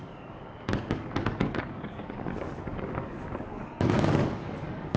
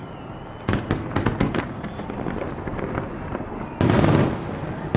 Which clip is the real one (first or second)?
second